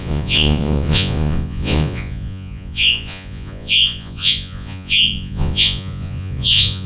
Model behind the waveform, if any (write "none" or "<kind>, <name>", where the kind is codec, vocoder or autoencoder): vocoder, Vocos